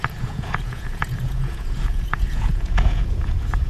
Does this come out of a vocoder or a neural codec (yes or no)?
yes